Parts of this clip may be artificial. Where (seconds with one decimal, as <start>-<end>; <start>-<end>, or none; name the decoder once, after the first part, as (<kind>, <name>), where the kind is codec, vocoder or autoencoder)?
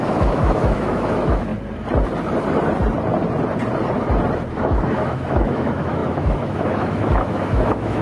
0.0-1.5 (autoencoder, DAC-VAE); 4.5-8.0